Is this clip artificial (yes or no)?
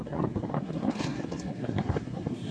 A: yes